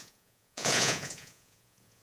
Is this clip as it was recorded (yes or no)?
no